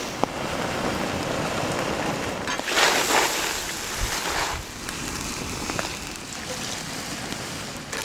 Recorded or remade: recorded